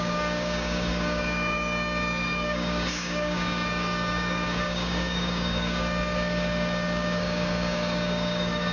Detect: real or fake fake